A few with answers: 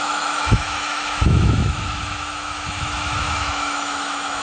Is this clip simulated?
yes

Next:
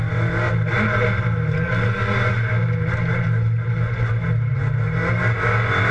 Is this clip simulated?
no